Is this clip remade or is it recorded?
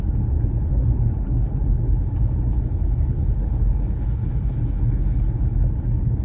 remade